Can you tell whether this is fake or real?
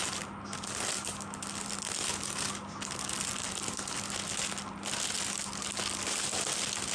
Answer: real